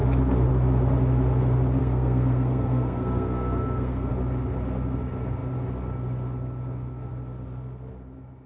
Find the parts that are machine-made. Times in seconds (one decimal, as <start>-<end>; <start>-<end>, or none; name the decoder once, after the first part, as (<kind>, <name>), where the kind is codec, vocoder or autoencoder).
1.8-4.1 (codec, SNAC)